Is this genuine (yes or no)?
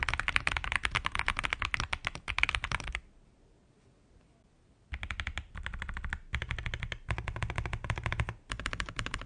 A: yes